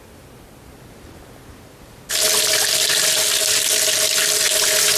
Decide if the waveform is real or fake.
real